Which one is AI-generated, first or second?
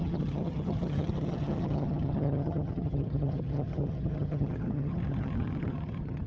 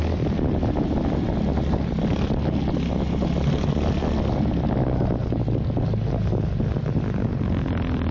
first